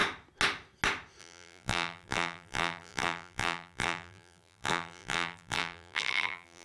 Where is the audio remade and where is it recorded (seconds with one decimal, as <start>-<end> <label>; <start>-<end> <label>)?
0.0-1.2 recorded; 1.2-6.6 remade

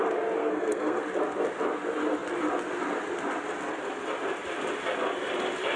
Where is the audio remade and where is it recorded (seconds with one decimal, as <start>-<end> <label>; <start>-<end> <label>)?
0.0-0.4 recorded; 0.4-1.0 remade; 1.0-5.8 recorded

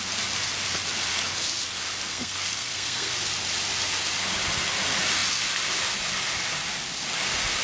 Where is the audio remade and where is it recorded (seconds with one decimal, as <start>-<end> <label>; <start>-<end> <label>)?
0.0-2.1 recorded; 2.1-3.2 remade; 3.2-7.6 recorded

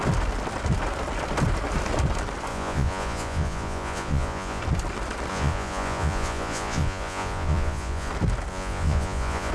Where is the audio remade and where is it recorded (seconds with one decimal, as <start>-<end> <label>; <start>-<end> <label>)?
0.0-2.5 recorded; 2.5-4.6 remade; 4.6-5.3 recorded; 5.3-8.1 remade; 8.1-8.5 recorded; 8.5-9.5 remade

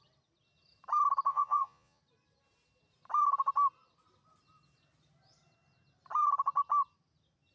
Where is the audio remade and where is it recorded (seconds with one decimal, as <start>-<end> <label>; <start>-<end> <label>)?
0.0-1.3 recorded; 1.3-2.0 remade; 2.0-7.5 recorded